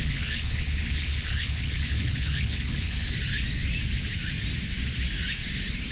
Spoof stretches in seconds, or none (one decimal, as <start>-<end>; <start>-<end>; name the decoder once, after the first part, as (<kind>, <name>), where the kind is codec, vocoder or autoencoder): 0.0-3.1 (codec, HILCodec)